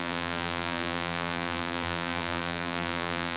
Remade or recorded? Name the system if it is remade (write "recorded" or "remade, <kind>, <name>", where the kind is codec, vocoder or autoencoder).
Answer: remade, vocoder, BigVGAN v2